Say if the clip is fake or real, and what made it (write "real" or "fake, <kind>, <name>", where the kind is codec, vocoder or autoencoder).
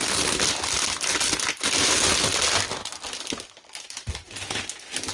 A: real